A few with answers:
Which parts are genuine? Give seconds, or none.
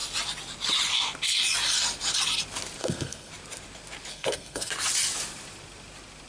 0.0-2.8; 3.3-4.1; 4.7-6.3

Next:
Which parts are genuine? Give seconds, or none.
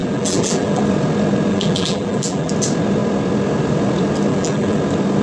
0.8-1.5; 2.5-4.3; 4.8-5.2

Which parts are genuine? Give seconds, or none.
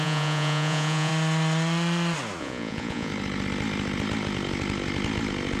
1.1-2.4; 3.1-5.6